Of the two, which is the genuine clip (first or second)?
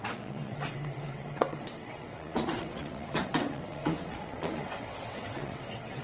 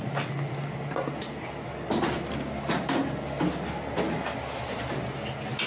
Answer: second